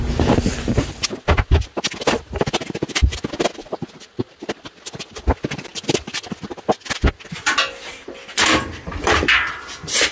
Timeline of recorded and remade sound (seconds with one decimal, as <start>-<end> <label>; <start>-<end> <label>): 0.0-10.1 recorded